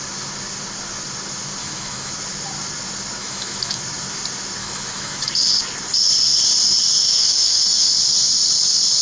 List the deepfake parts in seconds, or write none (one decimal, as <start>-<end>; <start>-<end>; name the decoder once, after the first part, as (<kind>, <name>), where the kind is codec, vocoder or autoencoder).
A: 1.6-2.1 (autoencoder, DAC-VAE); 3.2-3.8; 4.6-5.3; 7.0-7.9